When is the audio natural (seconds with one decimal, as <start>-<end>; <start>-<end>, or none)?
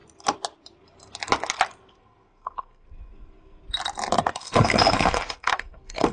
0.0-1.9; 3.6-4.2